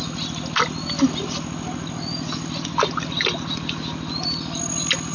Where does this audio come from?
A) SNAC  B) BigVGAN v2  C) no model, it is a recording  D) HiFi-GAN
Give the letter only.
C